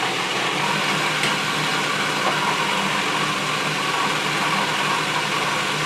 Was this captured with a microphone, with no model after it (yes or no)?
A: yes